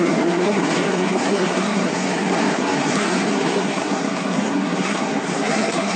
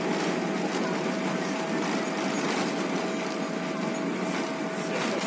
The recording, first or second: second